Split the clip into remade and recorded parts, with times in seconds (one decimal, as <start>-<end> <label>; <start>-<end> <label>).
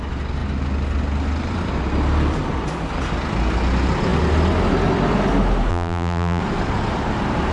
0.0-5.7 recorded; 5.7-6.4 remade; 6.4-7.5 recorded